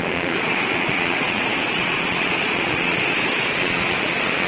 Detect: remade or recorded remade